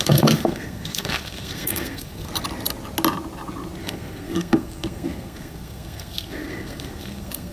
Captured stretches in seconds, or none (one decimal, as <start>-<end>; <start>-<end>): 2.3-3.8